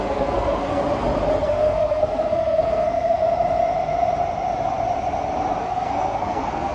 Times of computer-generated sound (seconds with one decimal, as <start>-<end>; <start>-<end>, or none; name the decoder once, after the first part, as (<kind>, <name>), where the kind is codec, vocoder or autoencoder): 0.0-0.8 (codec, SNAC); 1.4-3.2; 5.6-6.7